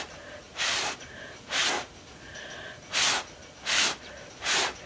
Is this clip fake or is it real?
real